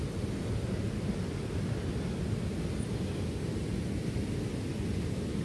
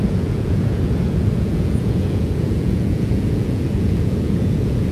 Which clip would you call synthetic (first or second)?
second